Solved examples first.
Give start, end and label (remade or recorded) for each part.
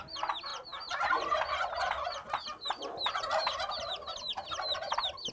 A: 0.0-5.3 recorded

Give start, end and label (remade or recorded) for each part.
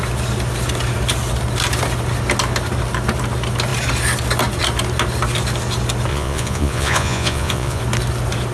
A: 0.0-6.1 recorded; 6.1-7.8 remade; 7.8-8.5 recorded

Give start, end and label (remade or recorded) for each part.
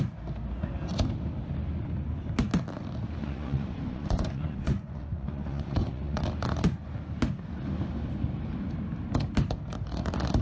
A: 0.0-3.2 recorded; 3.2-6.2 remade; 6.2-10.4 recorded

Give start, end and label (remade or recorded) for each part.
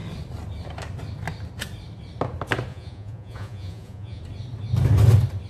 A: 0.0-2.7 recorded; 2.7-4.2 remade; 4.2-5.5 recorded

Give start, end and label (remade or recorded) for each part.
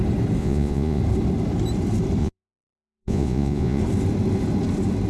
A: 0.0-0.4 recorded; 0.4-1.0 remade; 1.0-2.2 recorded; 2.2-3.8 remade; 3.8-5.1 recorded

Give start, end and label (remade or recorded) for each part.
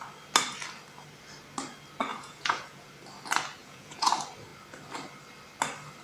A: 0.0-2.1 recorded; 2.1-2.9 remade; 2.9-3.6 recorded; 3.6-4.1 remade; 4.1-6.0 recorded